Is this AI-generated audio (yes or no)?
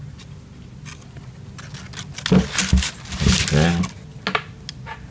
no